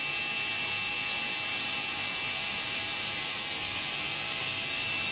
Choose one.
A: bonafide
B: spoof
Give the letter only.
A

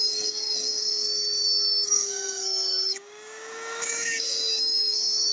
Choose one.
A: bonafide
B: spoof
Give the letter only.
B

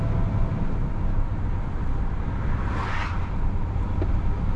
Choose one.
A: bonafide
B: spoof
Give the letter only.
A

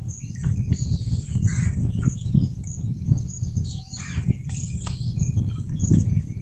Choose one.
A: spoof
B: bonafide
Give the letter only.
A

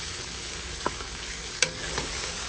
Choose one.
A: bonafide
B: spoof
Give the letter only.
B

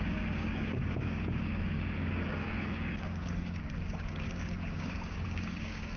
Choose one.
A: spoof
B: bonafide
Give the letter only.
A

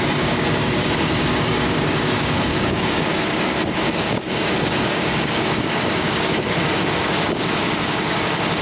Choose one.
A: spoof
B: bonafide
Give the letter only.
A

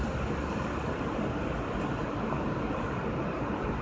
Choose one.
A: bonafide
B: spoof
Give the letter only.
A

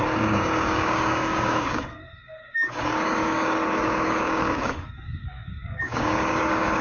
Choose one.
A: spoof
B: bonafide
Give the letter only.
A